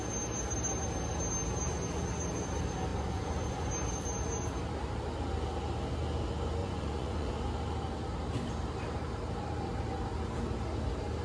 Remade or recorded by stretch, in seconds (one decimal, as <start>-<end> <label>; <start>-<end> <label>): 0.0-2.9 recorded; 2.9-3.7 remade; 3.7-6.6 recorded; 6.6-7.3 remade; 7.3-11.2 recorded